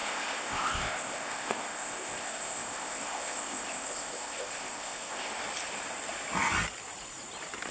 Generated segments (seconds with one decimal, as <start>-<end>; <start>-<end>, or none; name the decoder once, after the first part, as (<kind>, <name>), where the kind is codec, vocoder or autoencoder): 0.0-5.3 (codec, ZipCodec)